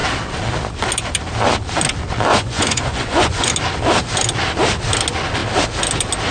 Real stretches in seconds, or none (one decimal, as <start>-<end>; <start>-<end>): 0.0-2.3; 3.5-6.3